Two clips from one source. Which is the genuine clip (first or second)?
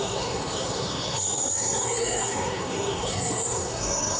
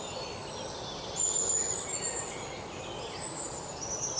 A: second